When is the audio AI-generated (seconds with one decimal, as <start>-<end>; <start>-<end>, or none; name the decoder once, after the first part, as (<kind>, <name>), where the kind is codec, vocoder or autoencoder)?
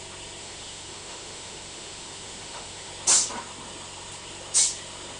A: 0.4-2.9 (autoencoder, DAC-VAE)